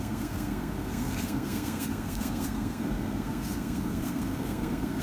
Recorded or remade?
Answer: remade